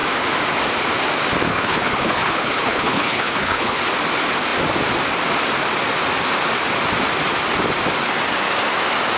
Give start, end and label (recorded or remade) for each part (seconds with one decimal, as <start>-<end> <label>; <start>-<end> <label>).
0.0-1.5 recorded; 1.5-3.8 remade; 3.8-9.2 recorded